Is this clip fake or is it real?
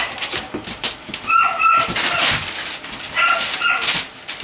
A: real